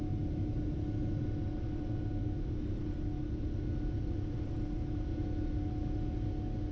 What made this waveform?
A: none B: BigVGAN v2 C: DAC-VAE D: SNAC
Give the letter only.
A